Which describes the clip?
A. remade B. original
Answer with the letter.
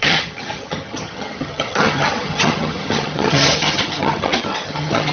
A